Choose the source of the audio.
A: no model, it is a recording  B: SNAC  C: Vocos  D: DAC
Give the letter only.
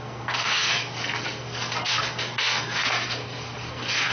B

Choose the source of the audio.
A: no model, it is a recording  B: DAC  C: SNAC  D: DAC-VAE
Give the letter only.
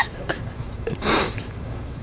D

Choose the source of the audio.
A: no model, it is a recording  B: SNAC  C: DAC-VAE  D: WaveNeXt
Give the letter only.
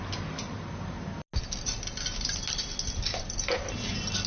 A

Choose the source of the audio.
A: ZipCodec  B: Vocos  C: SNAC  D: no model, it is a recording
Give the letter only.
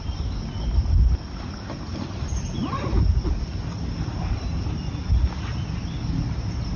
D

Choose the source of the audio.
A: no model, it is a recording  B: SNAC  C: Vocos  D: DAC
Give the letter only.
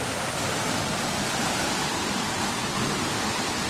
A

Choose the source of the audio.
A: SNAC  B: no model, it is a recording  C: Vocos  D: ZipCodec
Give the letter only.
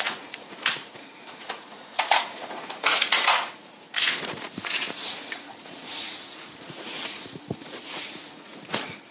C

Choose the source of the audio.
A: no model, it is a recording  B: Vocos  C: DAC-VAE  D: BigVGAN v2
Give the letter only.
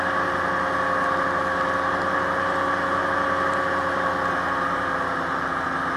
A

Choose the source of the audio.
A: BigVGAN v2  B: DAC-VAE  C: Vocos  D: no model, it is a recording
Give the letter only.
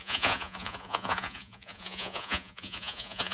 C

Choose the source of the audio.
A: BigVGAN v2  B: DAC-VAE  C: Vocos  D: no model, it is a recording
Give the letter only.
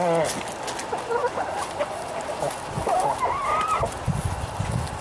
D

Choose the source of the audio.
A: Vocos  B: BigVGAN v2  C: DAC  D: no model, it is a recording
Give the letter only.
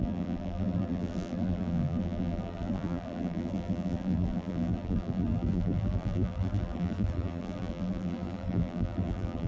B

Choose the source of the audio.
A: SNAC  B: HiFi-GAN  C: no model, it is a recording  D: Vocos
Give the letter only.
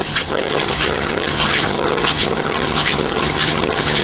B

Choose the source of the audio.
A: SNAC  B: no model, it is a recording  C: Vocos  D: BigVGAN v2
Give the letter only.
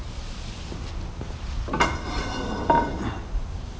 B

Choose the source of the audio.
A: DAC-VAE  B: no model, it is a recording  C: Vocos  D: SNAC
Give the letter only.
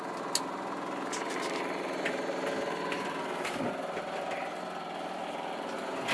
B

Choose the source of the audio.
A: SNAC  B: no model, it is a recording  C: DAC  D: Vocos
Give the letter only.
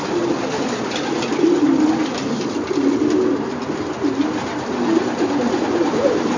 B